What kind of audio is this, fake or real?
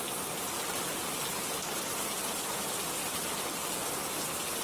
real